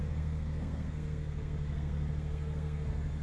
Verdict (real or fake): fake